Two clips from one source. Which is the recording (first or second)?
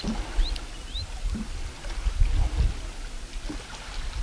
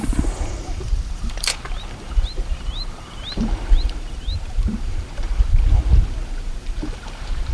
first